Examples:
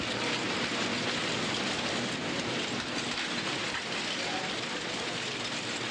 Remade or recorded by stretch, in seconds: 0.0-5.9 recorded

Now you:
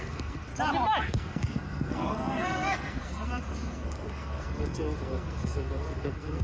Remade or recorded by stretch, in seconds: 0.0-0.5 remade; 0.5-1.0 recorded; 1.0-6.4 remade

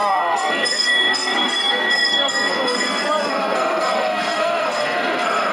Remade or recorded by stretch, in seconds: 0.0-5.5 remade

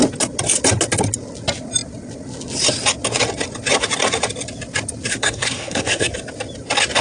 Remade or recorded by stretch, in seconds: 0.0-5.1 recorded; 5.1-6.1 remade; 6.1-7.0 recorded

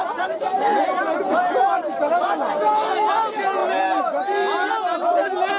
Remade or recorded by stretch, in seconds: 0.0-5.6 recorded

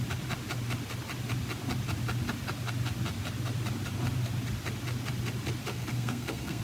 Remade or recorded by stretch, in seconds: 0.0-5.7 recorded; 5.7-6.6 remade

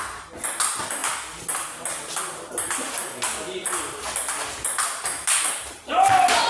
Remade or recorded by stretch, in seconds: 0.0-6.5 recorded

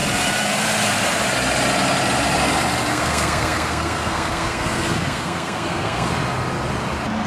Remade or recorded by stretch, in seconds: 0.0-2.9 recorded; 2.9-6.1 remade; 6.1-7.3 recorded